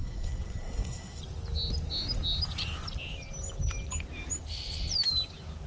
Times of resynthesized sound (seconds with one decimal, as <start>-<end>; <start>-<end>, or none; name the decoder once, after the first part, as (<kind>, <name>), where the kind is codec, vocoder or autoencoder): 0.0-1.2 (codec, SNAC)